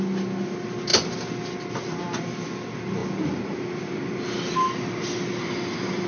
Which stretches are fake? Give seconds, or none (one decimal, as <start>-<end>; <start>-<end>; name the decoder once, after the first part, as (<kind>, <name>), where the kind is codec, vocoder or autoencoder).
none